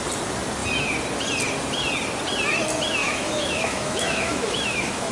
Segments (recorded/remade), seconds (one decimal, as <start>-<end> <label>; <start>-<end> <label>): 0.0-3.0 recorded; 3.0-5.1 remade